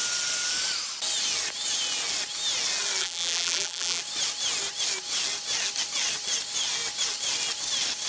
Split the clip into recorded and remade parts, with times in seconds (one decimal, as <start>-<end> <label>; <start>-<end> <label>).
0.0-3.0 recorded; 3.0-4.0 remade; 4.0-8.1 recorded